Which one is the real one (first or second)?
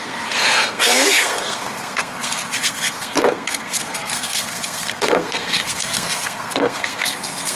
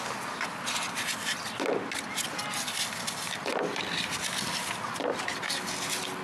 second